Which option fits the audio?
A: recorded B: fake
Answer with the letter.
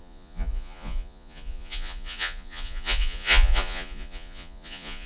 B